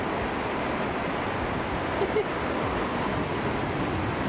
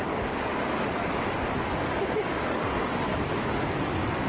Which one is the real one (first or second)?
first